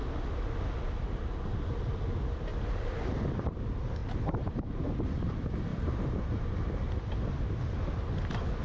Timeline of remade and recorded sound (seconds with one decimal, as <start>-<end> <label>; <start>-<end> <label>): 0.0-2.5 recorded; 2.5-3.4 remade; 3.4-4.0 recorded; 4.0-5.1 remade; 5.1-5.7 recorded; 5.7-6.2 remade; 6.2-8.6 recorded